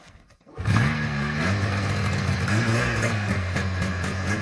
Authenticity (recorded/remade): remade